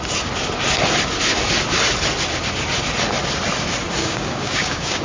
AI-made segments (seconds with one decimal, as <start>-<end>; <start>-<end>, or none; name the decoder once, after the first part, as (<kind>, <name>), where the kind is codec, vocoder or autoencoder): 4.0-5.0 (codec, DAC)